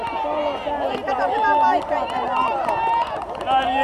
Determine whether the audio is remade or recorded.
recorded